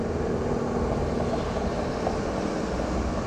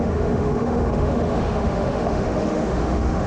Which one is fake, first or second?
second